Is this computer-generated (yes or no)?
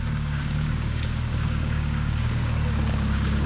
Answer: yes